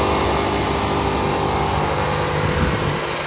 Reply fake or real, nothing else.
real